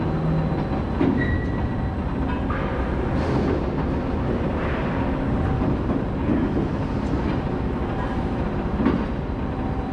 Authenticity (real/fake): real